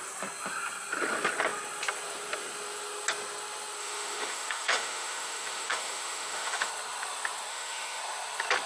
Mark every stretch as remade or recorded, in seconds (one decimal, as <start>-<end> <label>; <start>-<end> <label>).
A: 0.0-3.8 recorded; 3.8-6.7 remade; 6.7-7.5 recorded; 7.5-8.0 remade; 8.0-8.7 recorded